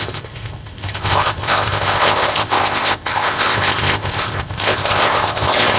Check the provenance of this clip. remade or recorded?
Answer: remade